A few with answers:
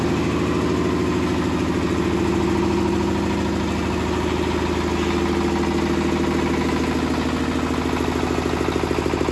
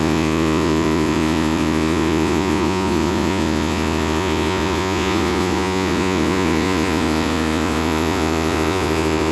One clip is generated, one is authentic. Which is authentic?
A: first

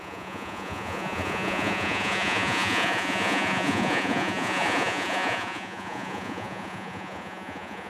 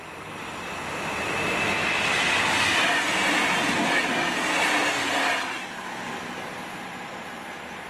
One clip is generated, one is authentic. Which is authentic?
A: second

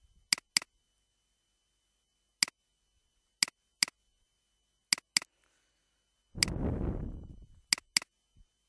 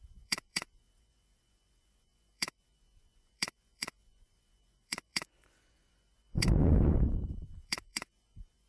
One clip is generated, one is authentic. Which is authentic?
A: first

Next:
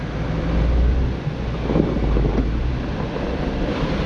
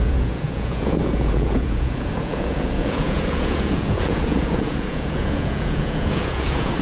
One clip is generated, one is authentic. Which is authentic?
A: first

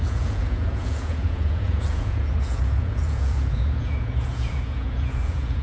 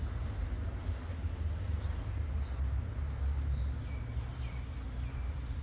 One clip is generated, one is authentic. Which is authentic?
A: second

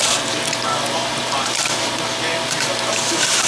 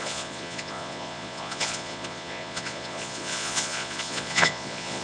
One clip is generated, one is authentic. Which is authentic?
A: first